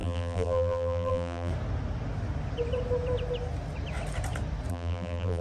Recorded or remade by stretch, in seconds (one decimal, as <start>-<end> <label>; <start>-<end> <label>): 0.0-1.5 remade; 1.5-4.7 recorded; 4.7-5.4 remade